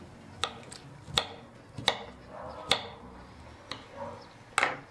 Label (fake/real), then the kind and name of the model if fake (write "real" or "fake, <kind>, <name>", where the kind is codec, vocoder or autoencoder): real